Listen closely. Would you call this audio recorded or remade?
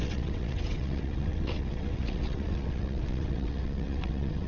remade